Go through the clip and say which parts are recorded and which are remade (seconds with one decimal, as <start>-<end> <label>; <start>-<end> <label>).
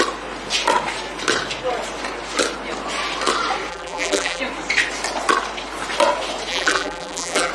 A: 0.0-3.7 recorded; 3.7-4.4 remade; 4.4-6.5 recorded; 6.5-7.5 remade